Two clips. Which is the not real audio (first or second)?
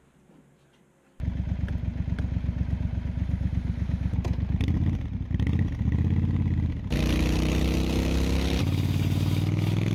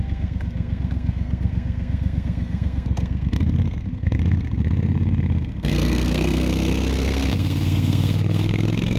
second